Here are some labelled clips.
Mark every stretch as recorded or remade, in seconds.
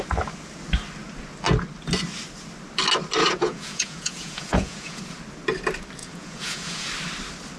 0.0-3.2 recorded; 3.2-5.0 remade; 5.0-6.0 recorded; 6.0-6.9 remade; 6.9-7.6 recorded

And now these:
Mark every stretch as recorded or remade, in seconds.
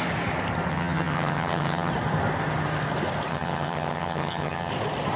0.0-0.7 recorded; 0.7-1.9 remade; 1.9-3.3 recorded; 3.3-4.7 remade; 4.7-5.2 recorded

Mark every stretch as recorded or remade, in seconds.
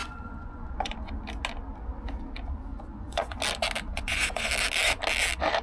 0.0-1.1 remade; 1.1-2.7 recorded; 2.7-3.4 remade; 3.4-3.9 recorded; 3.9-4.5 remade; 4.5-5.6 recorded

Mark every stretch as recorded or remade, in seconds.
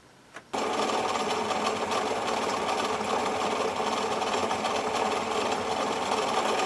0.0-6.7 recorded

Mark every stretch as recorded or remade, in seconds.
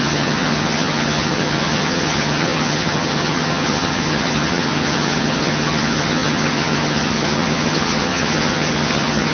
0.0-9.3 remade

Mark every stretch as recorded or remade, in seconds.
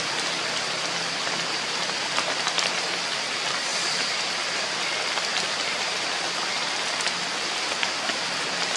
0.0-3.7 recorded; 3.7-4.2 remade; 4.2-8.8 recorded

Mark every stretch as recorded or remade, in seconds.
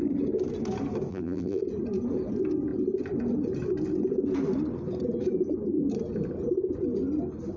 0.0-1.1 recorded; 1.1-1.6 remade; 1.6-7.6 recorded